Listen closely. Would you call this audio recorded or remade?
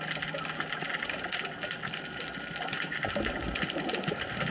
recorded